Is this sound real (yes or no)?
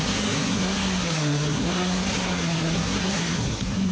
no